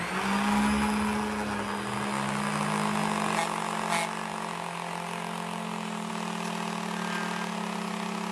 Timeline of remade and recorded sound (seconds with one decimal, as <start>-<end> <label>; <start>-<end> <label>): 0.0-8.3 recorded